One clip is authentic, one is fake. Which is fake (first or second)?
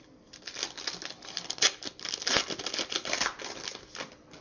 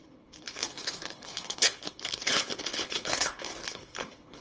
second